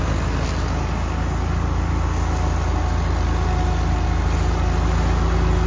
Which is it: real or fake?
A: real